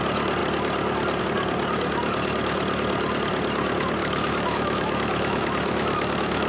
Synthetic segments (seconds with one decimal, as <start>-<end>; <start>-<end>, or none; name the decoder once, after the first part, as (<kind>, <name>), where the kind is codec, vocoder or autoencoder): 4.0-6.5 (autoencoder, DAC-VAE)